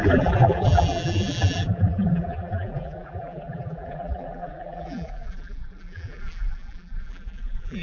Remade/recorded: remade